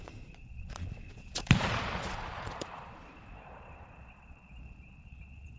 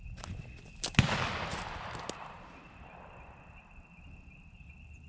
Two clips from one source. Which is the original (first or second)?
second